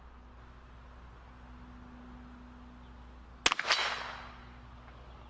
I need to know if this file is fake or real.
real